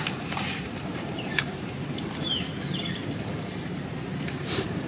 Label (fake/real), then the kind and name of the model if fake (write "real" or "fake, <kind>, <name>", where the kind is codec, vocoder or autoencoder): fake, vocoder, BigVGAN v2